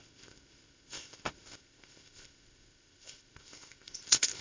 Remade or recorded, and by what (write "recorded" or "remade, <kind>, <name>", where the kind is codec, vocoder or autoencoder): remade, codec, ZipCodec